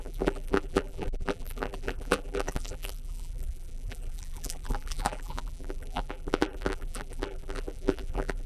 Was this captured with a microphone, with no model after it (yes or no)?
no